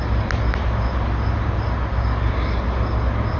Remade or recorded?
recorded